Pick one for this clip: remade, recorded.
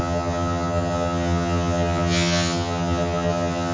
remade